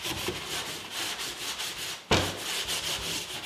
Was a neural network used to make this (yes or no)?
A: no